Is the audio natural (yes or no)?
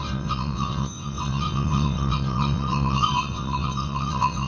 no